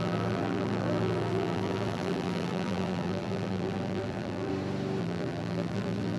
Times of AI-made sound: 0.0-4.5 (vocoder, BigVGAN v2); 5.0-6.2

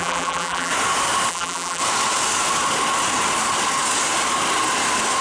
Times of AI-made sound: 0.0-0.7 (vocoder, BigVGAN v2); 1.3-1.8

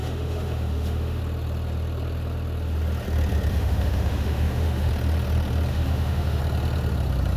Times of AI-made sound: 0.0-1.2 (autoencoder, DAC-VAE); 3.5-4.9; 5.7-6.4

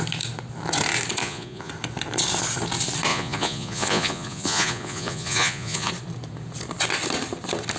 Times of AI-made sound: 1.2-1.7 (vocoder, Vocos); 3.1-5.9